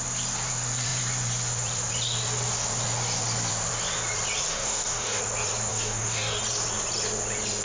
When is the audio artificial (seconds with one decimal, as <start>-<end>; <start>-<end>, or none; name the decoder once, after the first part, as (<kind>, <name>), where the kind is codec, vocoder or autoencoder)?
4.5-5.2 (codec, DAC); 5.7-6.4